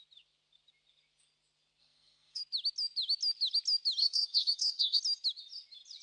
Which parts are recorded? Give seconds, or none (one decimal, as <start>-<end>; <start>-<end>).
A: 0.0-1.8; 2.4-4.0; 5.0-6.0